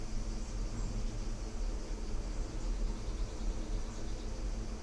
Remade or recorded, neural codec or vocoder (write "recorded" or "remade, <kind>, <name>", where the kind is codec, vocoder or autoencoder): recorded